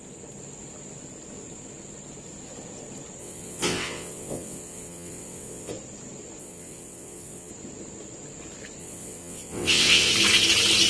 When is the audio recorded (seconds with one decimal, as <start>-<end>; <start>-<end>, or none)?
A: 0.0-3.2; 5.7-6.4; 7.5-8.8; 10.1-10.9